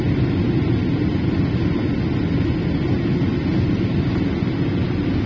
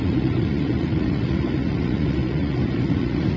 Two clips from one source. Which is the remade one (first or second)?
second